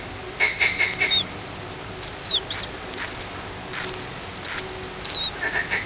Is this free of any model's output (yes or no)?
yes